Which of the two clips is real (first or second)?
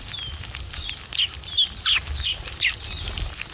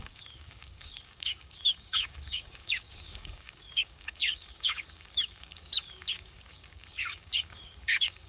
first